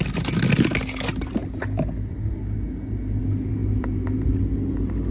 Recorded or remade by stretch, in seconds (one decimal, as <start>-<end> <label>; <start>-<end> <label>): 0.0-5.1 recorded